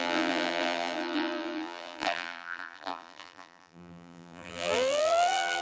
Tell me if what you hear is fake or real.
fake